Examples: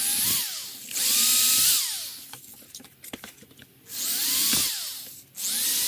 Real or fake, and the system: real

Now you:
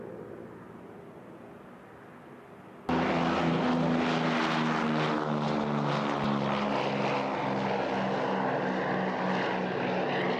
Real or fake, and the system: real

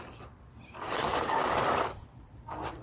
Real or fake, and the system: fake, vocoder, BigVGAN v2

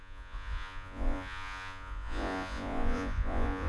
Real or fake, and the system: fake, vocoder, Vocos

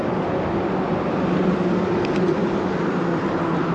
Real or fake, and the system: real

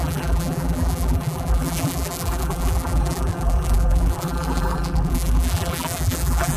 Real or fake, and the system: fake, vocoder, BigVGAN v2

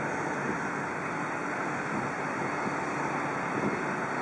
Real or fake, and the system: real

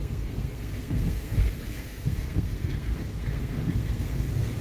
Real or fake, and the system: fake, codec, SNAC